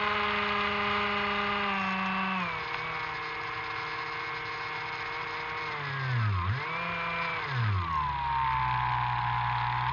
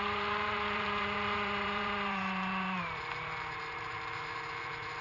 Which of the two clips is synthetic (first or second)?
second